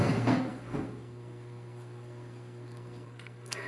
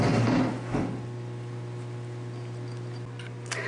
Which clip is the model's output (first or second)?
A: first